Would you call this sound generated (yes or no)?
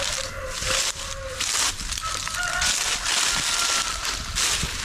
no